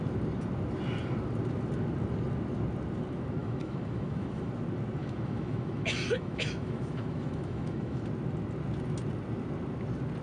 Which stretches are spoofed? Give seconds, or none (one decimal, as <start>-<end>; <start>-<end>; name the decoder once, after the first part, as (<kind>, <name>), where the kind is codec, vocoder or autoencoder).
3.4-4.5 (autoencoder, DAC-VAE); 5.0-8.0